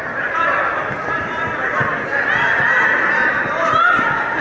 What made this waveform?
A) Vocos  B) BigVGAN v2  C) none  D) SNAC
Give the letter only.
C